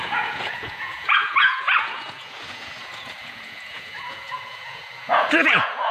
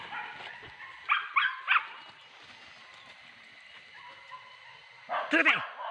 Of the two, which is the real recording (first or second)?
second